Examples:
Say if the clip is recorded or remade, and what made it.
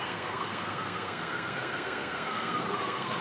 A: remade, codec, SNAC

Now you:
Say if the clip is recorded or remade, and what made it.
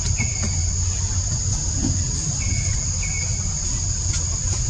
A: recorded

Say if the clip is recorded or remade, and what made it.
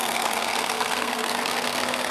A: remade, codec, SNAC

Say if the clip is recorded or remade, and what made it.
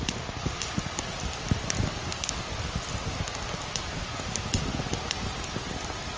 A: recorded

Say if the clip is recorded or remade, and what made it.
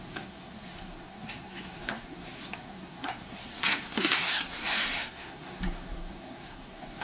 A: remade, codec, SNAC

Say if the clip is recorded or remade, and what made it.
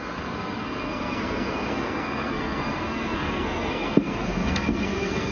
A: remade, codec, SNAC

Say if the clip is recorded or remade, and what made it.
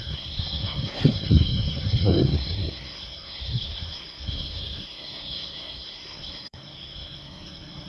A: remade, codec, SNAC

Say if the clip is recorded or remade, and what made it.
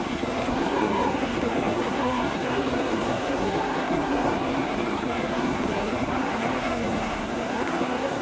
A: remade, codec, SNAC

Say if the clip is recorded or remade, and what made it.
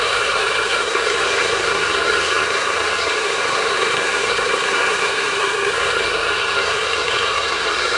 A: remade, codec, SNAC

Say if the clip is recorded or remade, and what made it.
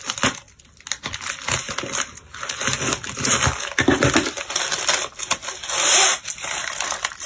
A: recorded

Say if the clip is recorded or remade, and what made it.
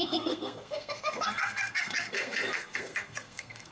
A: remade, codec, SNAC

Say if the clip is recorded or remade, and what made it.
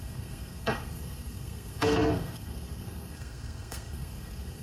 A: remade, codec, SNAC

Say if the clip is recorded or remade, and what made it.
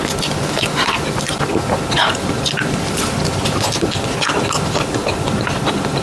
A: recorded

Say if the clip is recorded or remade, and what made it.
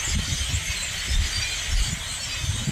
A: recorded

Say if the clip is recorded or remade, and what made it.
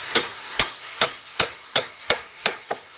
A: remade, codec, SNAC